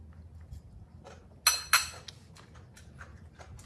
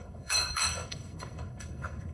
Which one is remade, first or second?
second